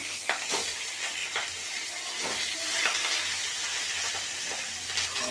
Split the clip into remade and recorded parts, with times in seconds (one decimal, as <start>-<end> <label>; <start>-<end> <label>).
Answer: 0.0-0.5 remade; 0.5-5.3 recorded